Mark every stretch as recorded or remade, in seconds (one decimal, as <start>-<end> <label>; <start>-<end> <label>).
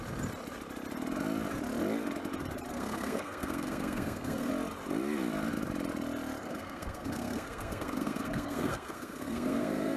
0.0-2.7 recorded; 2.7-4.5 remade; 4.5-6.4 recorded; 6.4-10.0 remade